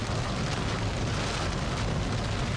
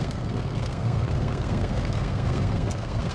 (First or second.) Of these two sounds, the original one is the first